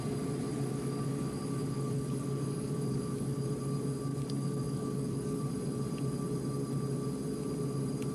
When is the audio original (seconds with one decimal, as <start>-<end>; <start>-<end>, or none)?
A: 0.0-0.5; 3.5-4.1; 5.4-8.1